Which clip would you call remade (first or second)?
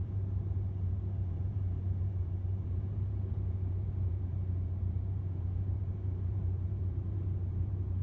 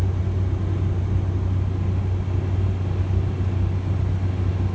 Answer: first